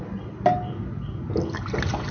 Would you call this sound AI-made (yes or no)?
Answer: no